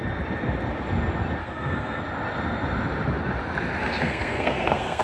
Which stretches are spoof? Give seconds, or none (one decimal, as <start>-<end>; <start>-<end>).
1.4-2.0; 3.8-5.0